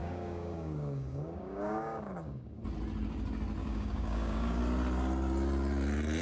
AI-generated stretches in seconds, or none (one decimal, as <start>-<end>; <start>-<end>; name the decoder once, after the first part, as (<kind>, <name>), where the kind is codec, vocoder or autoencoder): 0.0-2.6 (codec, DAC); 3.6-4.6